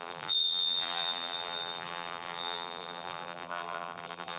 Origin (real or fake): fake